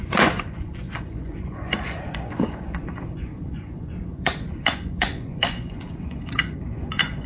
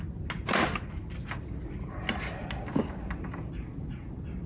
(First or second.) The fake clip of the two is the first